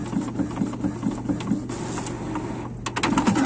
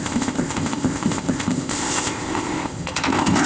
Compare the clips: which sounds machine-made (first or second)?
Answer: second